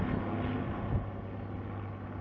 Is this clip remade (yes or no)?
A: no